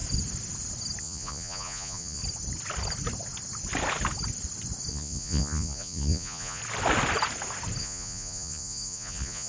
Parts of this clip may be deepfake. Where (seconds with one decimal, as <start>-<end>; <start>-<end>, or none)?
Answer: 1.0-2.2; 4.9-6.6; 7.8-9.5